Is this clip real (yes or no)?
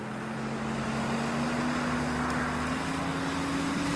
yes